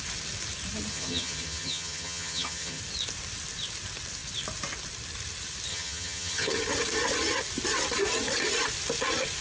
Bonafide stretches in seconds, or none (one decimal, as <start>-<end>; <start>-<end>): 0.0-0.9; 2.8-5.7; 6.6-9.4